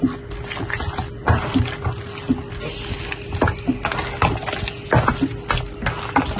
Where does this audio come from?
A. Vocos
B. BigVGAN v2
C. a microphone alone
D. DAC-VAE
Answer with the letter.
C